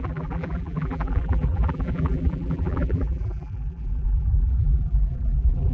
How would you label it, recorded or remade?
remade